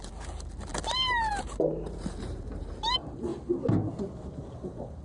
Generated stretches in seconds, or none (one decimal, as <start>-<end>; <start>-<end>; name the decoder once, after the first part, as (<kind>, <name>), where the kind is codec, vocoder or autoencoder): 0.0-3.3 (vocoder, BigVGAN v2); 4.3-5.0